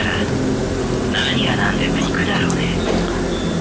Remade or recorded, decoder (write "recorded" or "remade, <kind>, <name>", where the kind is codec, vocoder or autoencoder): recorded